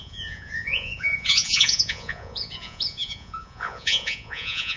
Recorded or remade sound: remade